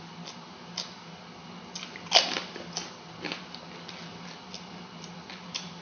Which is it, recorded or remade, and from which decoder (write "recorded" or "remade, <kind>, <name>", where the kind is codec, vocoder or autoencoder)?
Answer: recorded